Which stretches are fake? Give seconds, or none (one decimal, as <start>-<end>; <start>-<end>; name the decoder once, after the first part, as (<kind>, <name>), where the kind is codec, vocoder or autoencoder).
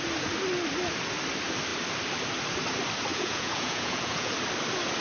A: 3.1-4.3 (vocoder, Vocos)